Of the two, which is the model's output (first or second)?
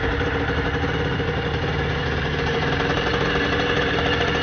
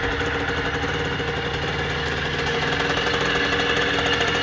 first